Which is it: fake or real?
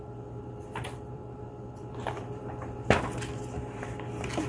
fake